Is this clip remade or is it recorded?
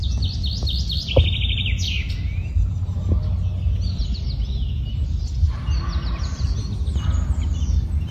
recorded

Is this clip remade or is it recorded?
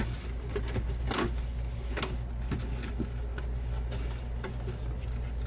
recorded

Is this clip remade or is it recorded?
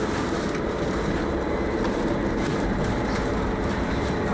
remade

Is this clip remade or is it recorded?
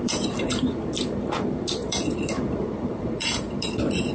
remade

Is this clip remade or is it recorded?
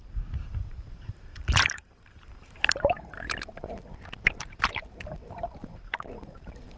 remade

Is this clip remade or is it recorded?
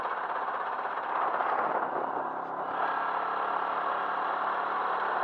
recorded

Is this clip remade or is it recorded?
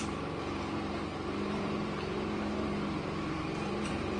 remade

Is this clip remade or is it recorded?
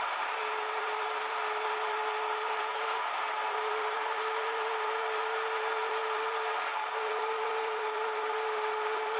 remade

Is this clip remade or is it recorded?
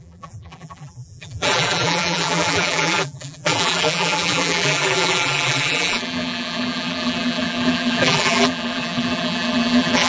remade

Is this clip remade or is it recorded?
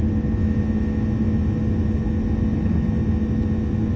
recorded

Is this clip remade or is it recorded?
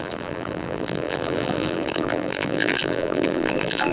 remade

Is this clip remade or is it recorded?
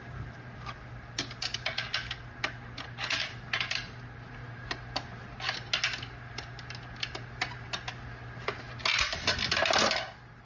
recorded